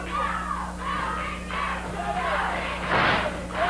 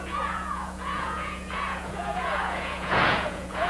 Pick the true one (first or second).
first